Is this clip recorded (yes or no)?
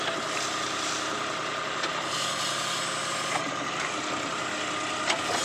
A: yes